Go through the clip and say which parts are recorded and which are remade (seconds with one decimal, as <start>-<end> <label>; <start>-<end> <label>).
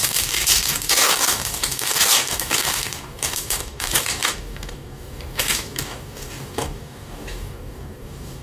0.0-8.4 remade